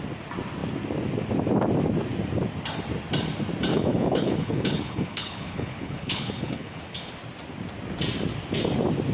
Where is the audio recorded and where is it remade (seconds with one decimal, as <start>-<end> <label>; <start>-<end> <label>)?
0.0-3.7 recorded; 3.7-6.8 remade; 6.8-9.1 recorded